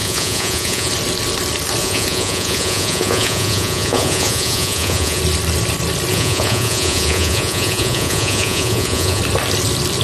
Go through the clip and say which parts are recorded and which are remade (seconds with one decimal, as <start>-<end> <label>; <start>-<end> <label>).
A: 0.0-0.9 remade; 0.9-1.8 recorded; 1.8-5.2 remade; 5.2-6.1 recorded; 6.1-9.2 remade; 9.2-10.0 recorded